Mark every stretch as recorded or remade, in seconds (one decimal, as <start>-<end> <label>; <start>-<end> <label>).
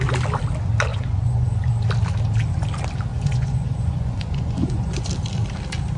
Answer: 0.0-0.9 recorded; 0.9-1.7 remade; 1.7-3.1 recorded; 3.1-5.1 remade; 5.1-6.0 recorded